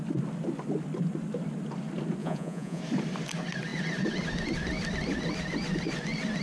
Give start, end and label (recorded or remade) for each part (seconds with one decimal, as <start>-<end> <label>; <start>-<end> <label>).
0.0-2.2 recorded; 2.2-2.8 remade; 2.8-6.4 recorded